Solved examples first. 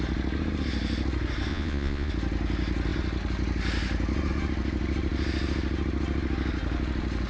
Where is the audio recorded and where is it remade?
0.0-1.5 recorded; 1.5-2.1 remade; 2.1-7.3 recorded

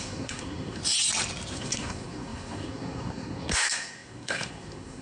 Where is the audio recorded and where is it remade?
0.0-0.8 remade; 0.8-1.5 recorded; 1.5-5.0 remade

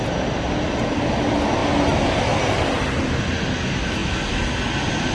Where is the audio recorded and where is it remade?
0.0-5.1 recorded

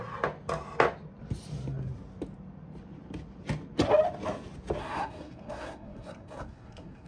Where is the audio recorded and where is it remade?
0.0-4.8 recorded; 4.8-7.1 remade

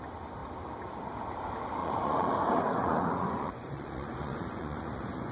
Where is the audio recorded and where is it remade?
0.0-1.8 recorded; 1.8-5.3 remade

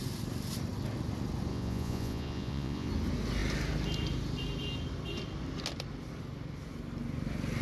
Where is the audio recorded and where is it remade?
0.0-1.5 recorded; 1.5-2.9 remade; 2.9-7.6 recorded

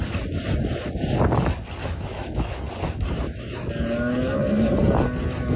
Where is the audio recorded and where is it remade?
0.0-1.8 recorded; 1.8-2.6 remade; 2.6-5.6 recorded

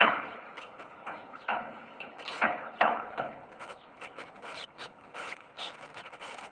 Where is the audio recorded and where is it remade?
0.0-6.5 remade